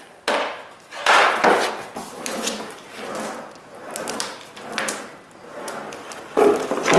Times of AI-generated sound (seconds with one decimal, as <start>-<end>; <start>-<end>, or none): none